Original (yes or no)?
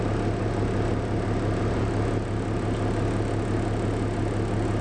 yes